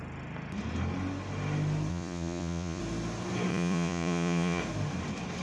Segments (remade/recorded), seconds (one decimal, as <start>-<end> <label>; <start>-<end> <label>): 0.0-1.9 recorded; 1.9-2.8 remade; 2.8-3.5 recorded; 3.5-4.6 remade; 4.6-5.4 recorded